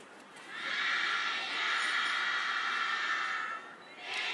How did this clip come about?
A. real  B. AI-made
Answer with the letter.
A